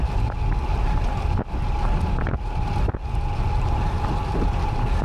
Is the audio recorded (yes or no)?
yes